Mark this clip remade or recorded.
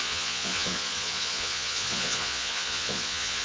remade